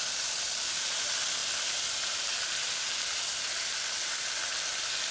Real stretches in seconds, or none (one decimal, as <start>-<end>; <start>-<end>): 0.0-5.1